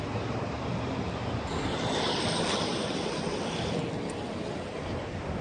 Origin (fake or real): fake